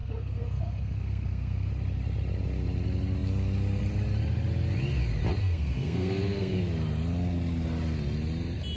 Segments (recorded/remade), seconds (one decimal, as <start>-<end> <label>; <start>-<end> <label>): 0.0-1.7 remade; 1.7-5.4 recorded; 5.4-6.6 remade; 6.6-8.8 recorded